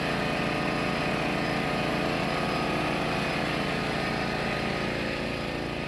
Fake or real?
real